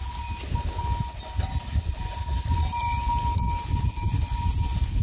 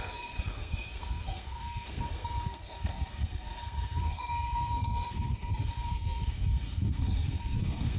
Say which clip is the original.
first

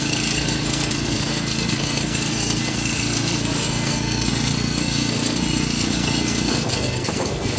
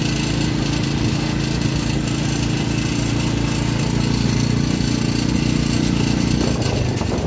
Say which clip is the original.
second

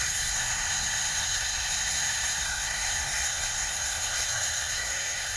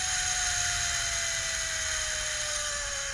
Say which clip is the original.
second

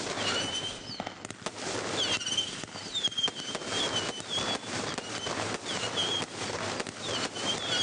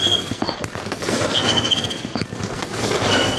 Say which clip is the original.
first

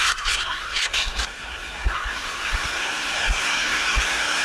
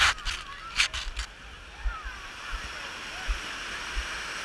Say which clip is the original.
second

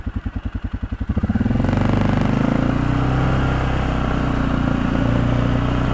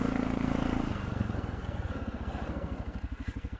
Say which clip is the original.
first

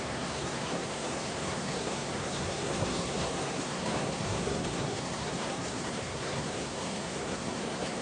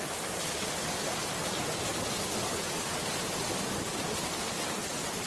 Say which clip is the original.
second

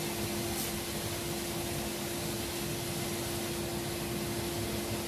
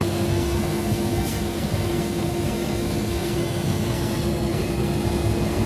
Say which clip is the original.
first